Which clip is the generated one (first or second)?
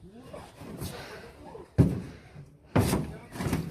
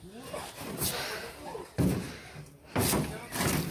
first